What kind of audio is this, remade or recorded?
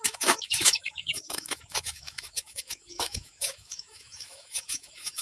remade